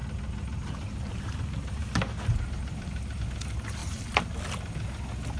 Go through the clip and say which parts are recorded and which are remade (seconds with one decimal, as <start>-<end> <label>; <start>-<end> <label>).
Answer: 0.0-3.2 remade; 3.2-3.8 recorded; 3.8-4.4 remade; 4.4-5.4 recorded